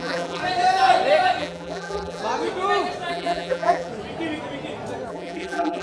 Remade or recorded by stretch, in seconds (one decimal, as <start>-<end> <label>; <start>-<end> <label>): 0.0-0.4 remade; 0.4-1.4 recorded; 1.4-2.2 remade; 2.2-3.1 recorded; 3.1-3.9 remade; 3.9-5.1 recorded; 5.1-5.8 remade